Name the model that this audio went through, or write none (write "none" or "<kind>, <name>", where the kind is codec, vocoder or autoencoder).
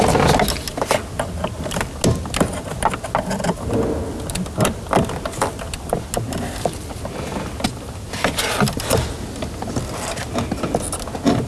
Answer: none